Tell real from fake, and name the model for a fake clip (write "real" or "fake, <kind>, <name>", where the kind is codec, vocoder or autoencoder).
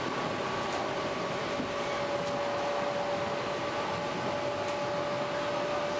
real